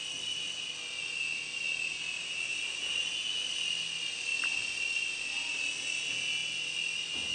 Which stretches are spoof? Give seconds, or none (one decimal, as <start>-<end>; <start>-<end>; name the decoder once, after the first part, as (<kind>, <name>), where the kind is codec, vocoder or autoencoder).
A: 4.3-5.3 (vocoder, BigVGAN v2)